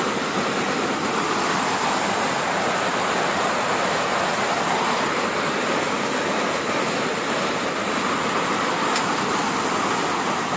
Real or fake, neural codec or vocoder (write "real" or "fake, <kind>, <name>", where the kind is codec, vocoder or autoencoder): real